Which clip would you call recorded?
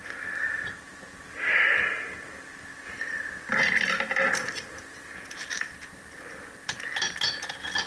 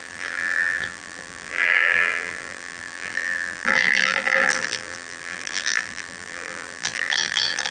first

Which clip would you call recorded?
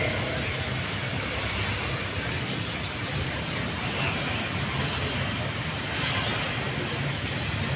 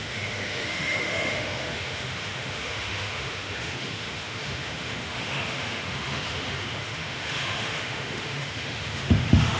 first